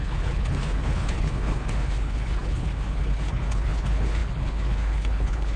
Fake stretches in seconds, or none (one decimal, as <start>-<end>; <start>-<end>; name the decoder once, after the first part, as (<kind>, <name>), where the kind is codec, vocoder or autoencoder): 0.0-5.6 (codec, HILCodec)